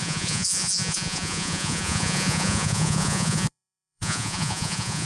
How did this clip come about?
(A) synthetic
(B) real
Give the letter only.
A